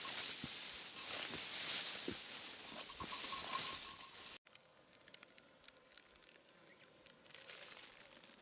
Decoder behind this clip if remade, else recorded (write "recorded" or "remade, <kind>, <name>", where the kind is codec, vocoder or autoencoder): recorded